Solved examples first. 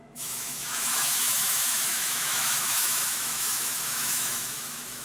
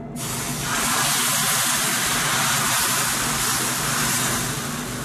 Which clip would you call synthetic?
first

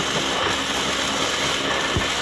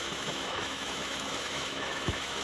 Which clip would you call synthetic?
second